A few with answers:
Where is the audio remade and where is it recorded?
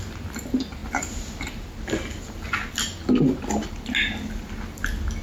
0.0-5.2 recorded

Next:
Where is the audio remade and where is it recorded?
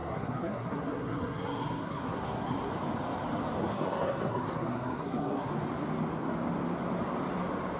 0.0-2.7 remade; 2.7-3.6 recorded; 3.6-5.5 remade; 5.5-7.8 recorded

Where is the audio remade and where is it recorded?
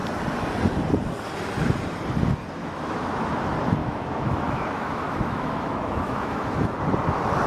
0.0-2.6 recorded; 2.6-3.3 remade; 3.3-3.8 recorded; 3.8-6.7 remade; 6.7-7.5 recorded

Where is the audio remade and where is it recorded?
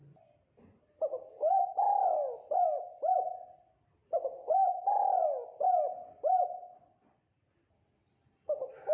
0.0-8.9 recorded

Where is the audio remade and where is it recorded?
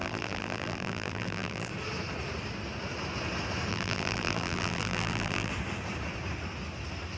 0.0-1.7 remade; 1.7-3.7 recorded; 3.7-5.5 remade; 5.5-7.2 recorded